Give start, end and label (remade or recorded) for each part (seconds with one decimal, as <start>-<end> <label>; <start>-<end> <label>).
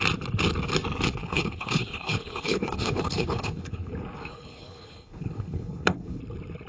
0.0-1.2 recorded; 1.2-3.9 remade; 3.9-4.3 recorded; 4.3-6.2 remade; 6.2-6.7 recorded